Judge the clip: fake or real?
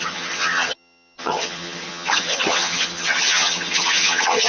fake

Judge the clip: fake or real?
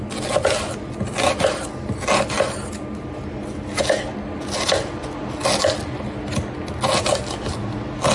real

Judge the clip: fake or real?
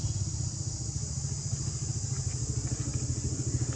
real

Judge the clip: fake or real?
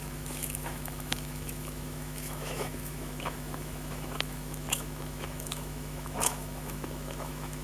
fake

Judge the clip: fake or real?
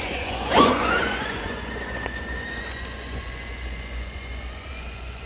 fake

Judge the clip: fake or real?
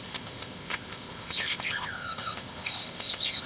fake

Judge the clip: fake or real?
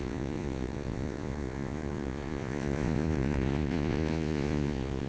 fake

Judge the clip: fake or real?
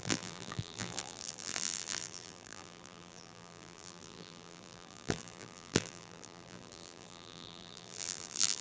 fake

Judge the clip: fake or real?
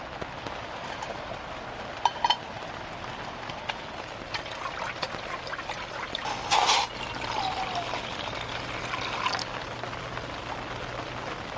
real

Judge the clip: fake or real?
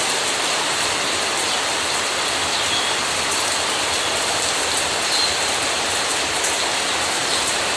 real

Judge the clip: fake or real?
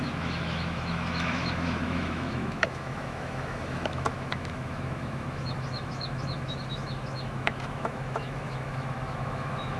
fake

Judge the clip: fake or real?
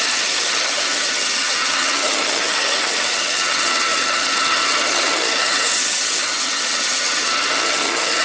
fake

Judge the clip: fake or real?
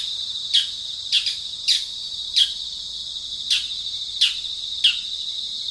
real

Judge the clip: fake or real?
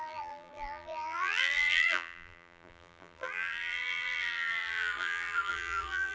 fake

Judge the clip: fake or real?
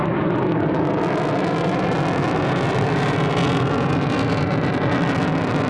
real